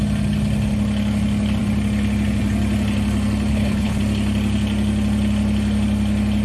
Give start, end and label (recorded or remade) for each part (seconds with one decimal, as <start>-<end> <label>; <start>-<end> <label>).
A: 0.0-3.5 recorded; 3.5-4.0 remade; 4.0-6.4 recorded